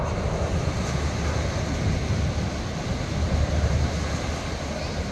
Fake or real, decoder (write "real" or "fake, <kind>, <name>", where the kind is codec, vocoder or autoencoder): real